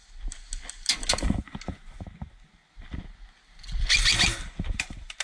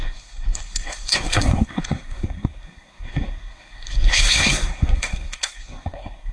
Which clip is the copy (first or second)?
second